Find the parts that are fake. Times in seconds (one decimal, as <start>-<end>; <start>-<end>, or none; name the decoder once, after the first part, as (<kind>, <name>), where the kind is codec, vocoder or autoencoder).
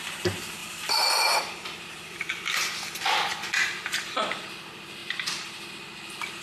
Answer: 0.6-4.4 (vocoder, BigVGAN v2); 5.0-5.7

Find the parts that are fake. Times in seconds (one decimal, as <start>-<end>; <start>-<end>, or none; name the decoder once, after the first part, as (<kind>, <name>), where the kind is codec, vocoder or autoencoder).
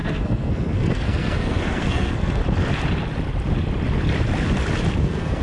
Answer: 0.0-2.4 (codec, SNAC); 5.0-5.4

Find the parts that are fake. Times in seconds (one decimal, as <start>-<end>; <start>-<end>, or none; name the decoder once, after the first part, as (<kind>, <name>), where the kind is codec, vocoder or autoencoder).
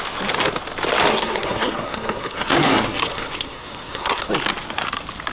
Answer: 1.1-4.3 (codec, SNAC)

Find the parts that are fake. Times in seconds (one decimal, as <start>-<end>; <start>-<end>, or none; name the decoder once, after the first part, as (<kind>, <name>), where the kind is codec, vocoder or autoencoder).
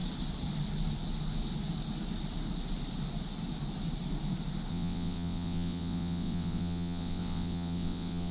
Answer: 4.7-8.3 (vocoder, WaveNeXt)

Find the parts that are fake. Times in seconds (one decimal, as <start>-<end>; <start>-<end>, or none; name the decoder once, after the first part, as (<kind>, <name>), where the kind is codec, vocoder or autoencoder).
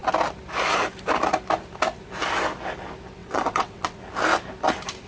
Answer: 3.2-4.0 (vocoder, WaveNeXt)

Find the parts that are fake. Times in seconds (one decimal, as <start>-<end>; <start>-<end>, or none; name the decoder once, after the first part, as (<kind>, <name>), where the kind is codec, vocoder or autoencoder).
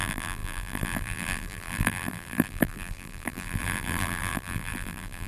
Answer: 0.0-5.3 (vocoder, BigVGAN v2)